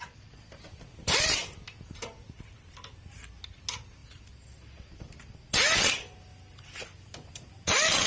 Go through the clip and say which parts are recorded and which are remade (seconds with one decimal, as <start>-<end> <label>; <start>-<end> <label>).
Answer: 0.0-8.1 recorded